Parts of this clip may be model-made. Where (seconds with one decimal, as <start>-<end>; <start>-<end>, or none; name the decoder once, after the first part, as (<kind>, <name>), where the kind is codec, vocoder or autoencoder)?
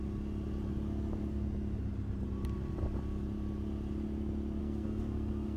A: 4.6-5.6 (codec, SNAC)